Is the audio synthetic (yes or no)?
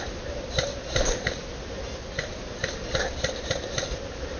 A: no